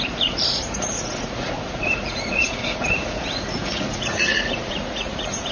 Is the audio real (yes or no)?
no